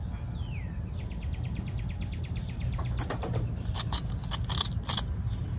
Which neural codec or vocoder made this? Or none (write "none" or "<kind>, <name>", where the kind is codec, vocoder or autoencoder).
none